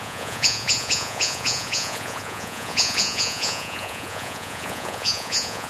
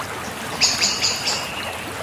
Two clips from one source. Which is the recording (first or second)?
second